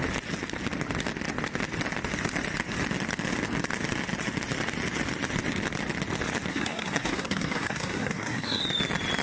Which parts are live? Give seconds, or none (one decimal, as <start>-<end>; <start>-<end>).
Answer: 0.0-6.5; 8.6-9.2